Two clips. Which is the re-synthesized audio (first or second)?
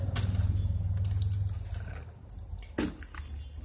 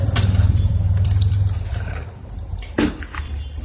second